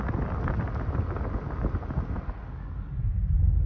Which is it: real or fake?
real